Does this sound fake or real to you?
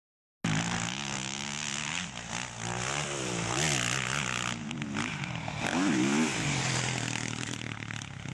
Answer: real